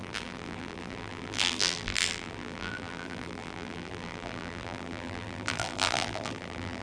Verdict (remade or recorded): remade